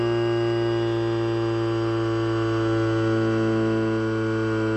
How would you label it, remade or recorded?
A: recorded